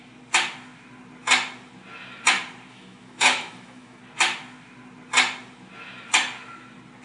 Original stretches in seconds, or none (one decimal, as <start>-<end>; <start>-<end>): 0.0-2.7; 4.0-7.0